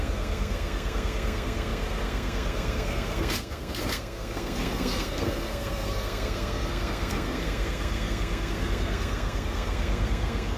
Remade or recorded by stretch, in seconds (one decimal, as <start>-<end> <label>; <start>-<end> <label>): 0.0-10.6 remade